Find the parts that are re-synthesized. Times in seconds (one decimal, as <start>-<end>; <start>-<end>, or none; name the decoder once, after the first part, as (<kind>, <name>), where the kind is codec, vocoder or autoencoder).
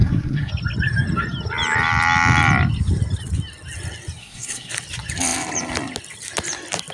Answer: 0.0-0.5 (codec, SNAC); 4.2-4.7